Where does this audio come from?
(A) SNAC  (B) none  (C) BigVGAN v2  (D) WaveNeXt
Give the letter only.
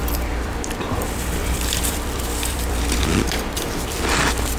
C